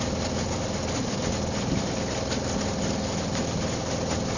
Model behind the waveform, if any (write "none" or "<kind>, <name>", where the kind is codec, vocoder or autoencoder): none